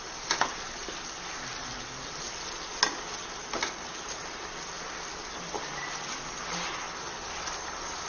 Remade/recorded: recorded